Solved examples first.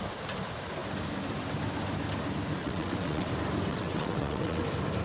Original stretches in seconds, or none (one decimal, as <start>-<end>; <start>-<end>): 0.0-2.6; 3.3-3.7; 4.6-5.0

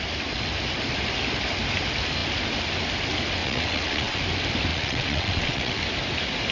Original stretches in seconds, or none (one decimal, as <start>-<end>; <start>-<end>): 0.0-3.4; 4.2-4.7; 5.8-6.5

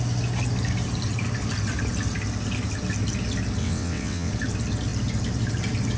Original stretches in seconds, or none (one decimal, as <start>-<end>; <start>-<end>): 0.0-3.6; 4.3-6.0

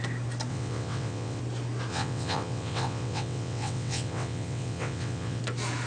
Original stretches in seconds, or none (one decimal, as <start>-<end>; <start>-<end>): 0.0-0.5; 1.4-1.9; 5.4-5.9

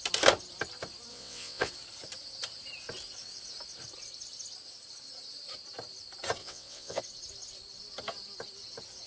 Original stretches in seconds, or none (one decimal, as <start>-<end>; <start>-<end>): 0.0-1.1; 1.7-6.4; 7.0-9.1

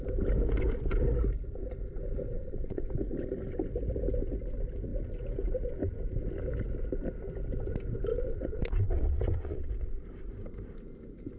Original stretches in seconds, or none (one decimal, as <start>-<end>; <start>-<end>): 0.0-2.3; 2.9-8.1; 9.7-11.4

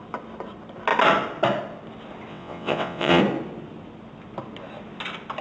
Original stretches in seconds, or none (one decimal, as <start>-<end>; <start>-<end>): 0.0-2.3; 3.2-5.4

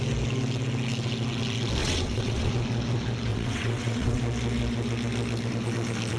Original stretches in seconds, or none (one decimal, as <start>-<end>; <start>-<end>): 0.0-1.8; 2.5-3.3; 4.2-6.2